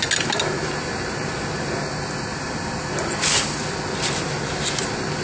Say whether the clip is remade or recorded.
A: recorded